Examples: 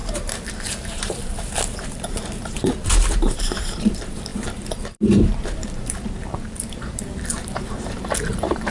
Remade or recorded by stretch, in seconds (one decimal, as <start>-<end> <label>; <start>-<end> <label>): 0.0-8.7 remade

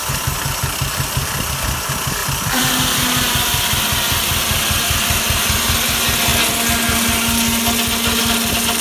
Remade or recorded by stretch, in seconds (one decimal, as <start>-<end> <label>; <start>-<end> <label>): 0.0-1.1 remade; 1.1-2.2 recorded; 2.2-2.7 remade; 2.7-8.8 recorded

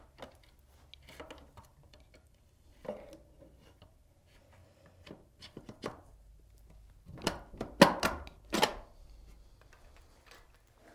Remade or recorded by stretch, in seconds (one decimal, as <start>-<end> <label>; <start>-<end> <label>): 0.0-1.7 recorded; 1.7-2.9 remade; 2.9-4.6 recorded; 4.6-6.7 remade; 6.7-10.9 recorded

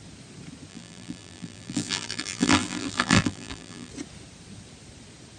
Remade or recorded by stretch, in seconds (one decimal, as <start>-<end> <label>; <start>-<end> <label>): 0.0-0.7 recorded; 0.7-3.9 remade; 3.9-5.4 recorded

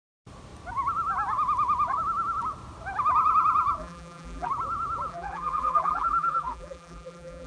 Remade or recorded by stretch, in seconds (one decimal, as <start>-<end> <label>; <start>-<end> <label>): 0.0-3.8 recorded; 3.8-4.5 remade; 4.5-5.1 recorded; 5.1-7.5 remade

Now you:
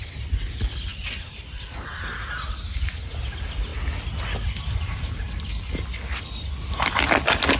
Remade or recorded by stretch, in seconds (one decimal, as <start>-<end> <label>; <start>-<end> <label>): 0.0-0.9 recorded; 0.9-2.0 remade; 2.0-7.6 recorded